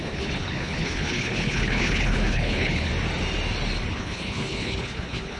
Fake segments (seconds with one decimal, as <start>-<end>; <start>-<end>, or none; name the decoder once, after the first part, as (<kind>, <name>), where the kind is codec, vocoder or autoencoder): 0.0-2.9 (codec, HILCodec); 3.9-5.4